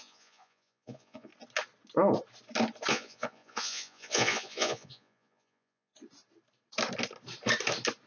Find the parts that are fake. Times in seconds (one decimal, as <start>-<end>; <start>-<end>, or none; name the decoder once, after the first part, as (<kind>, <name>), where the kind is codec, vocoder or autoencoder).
0.0-1.3 (vocoder, Vocos); 2.9-5.9